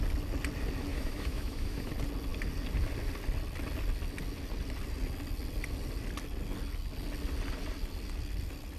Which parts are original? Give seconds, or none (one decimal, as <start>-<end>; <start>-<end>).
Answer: 0.0-0.9; 1.9-8.8